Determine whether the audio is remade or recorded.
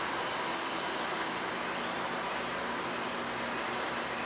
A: recorded